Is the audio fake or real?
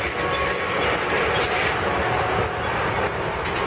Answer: real